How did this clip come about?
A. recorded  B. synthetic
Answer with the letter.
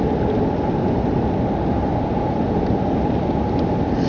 A